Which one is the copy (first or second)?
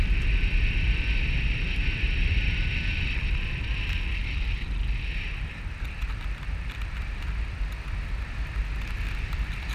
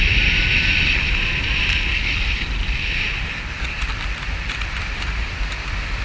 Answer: second